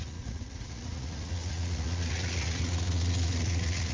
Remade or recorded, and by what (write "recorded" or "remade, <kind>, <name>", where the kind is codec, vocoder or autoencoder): remade, vocoder, Vocos